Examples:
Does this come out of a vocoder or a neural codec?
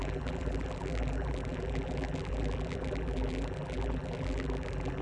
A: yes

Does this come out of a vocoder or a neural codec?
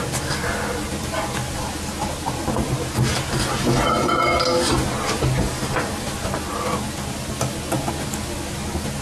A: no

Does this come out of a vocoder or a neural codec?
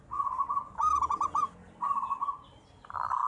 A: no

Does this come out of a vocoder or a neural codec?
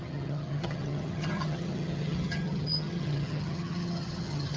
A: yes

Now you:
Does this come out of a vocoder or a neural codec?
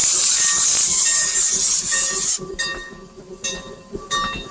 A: no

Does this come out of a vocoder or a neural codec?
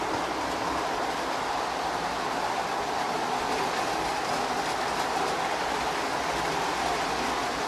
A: no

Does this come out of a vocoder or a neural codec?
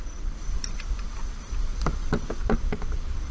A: no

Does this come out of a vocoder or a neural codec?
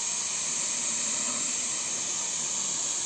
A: no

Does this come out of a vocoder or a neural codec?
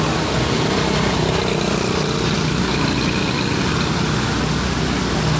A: no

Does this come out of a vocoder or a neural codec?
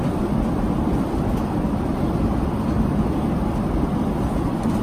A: yes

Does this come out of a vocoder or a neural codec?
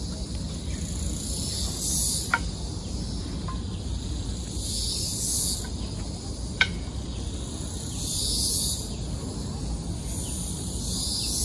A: no